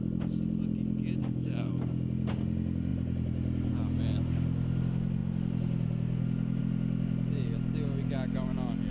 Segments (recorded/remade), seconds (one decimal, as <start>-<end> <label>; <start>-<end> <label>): 0.0-1.2 recorded; 1.2-1.7 remade; 1.7-8.9 recorded